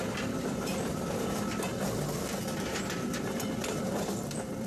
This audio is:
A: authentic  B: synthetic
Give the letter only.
B